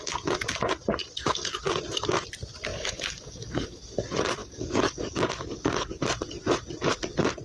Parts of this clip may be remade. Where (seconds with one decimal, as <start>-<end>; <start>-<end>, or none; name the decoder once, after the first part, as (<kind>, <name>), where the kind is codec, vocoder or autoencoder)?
2.7-3.8 (codec, DAC); 4.4-6.0